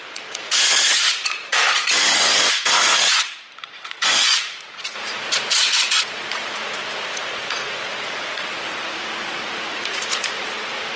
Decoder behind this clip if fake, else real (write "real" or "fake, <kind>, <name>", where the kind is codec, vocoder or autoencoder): fake, vocoder, Vocos